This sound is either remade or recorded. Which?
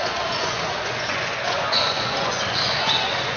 remade